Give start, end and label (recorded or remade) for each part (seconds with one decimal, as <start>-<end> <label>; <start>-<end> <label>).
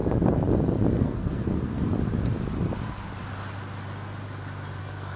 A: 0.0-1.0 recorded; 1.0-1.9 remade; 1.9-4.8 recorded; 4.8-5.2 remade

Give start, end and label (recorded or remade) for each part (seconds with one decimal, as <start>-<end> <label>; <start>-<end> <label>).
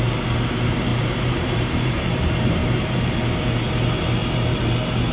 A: 0.0-0.9 recorded; 0.9-3.1 remade; 3.1-5.1 recorded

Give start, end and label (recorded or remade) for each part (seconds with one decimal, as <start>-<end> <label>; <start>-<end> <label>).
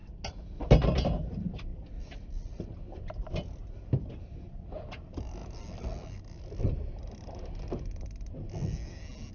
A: 0.0-9.3 recorded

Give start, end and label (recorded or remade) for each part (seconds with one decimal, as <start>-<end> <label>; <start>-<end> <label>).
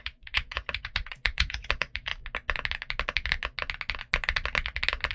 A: 0.0-2.1 remade; 2.1-5.1 recorded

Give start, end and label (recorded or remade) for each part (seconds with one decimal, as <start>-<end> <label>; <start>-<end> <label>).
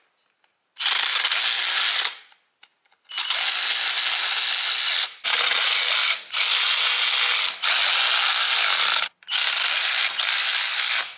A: 0.0-6.0 recorded; 6.0-6.8 remade; 6.8-8.3 recorded; 8.3-10.5 remade; 10.5-11.2 recorded